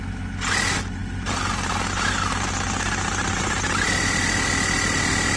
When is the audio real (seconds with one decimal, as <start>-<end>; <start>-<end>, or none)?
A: 0.0-5.4